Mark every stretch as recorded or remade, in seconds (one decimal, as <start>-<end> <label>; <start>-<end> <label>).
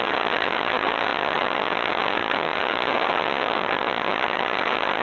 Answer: 0.0-5.0 remade